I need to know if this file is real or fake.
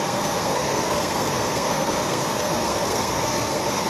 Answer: fake